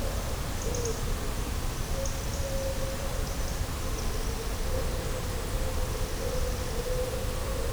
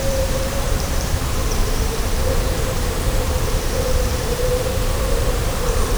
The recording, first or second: first